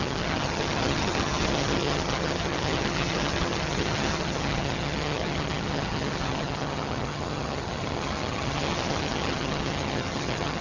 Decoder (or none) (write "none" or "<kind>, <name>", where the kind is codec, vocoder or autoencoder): vocoder, HiFi-GAN